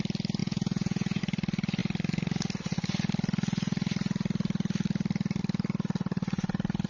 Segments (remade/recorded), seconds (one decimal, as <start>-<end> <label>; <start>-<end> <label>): 0.0-0.4 recorded; 0.4-1.2 remade; 1.2-6.9 recorded